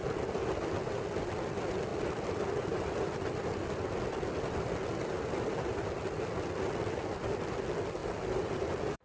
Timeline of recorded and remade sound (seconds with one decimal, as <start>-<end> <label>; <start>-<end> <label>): 0.0-1.9 recorded; 1.9-3.9 remade; 3.9-8.0 recorded; 8.0-8.5 remade; 8.5-9.0 recorded